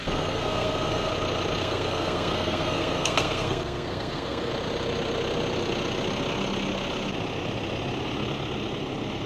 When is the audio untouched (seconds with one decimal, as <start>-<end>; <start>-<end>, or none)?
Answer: 1.1-1.6; 4.5-9.3